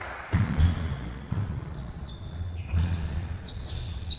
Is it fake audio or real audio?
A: fake